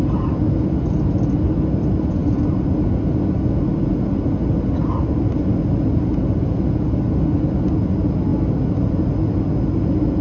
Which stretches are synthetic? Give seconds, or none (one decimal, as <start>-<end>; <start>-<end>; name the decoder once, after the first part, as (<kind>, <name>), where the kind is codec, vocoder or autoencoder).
none